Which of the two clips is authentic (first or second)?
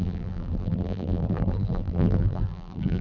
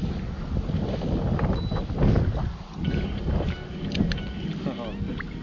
second